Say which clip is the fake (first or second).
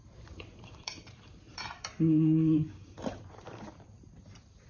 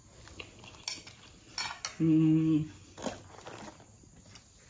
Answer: first